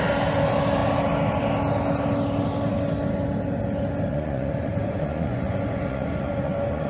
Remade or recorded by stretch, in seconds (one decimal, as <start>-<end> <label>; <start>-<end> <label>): 0.0-4.1 recorded; 4.1-6.9 remade